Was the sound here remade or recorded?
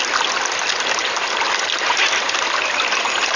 recorded